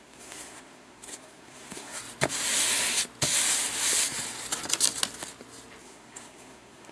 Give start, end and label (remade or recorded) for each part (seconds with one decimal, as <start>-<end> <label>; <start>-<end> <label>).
0.0-2.0 remade; 2.0-5.8 recorded; 5.8-6.9 remade